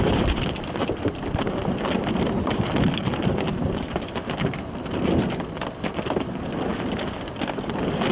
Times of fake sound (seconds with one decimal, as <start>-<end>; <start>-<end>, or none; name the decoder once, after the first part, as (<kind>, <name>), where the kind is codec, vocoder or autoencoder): 0.0-6.7 (vocoder, BigVGAN v2)